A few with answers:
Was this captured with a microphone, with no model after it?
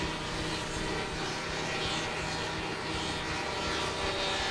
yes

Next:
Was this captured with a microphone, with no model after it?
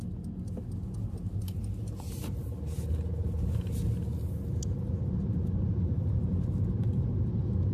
yes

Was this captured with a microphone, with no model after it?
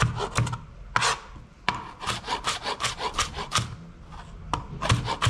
yes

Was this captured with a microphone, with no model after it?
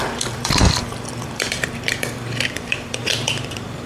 no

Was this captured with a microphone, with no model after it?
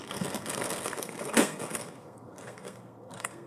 no